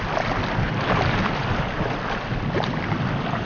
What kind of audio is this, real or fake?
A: real